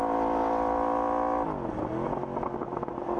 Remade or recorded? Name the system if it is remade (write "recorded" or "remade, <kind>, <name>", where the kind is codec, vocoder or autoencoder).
recorded